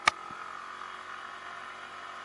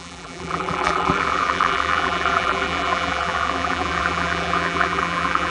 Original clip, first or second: first